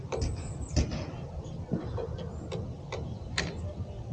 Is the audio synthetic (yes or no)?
no